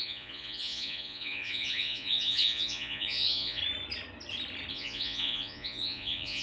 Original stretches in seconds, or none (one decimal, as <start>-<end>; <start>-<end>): 3.6-4.7